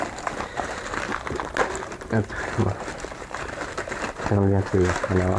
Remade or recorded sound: remade